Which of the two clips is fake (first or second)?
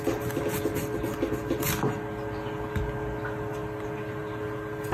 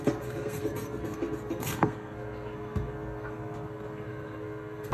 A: second